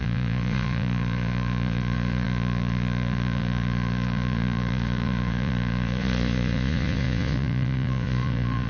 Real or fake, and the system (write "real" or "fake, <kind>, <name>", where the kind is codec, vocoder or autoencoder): fake, vocoder, Vocos